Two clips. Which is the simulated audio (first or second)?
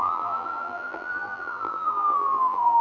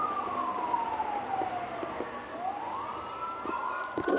first